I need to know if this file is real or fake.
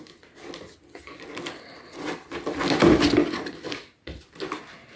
real